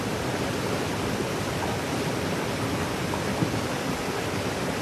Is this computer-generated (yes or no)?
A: no